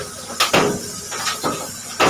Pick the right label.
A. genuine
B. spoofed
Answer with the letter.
A